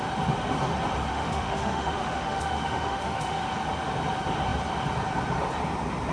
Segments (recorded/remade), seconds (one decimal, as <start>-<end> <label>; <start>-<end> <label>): 0.0-1.1 recorded; 1.1-3.4 remade; 3.4-6.1 recorded